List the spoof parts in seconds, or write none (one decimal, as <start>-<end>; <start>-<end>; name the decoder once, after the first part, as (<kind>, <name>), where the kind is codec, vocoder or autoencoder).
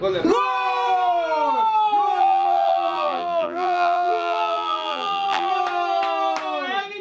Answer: 2.2-5.5 (vocoder, BigVGAN v2)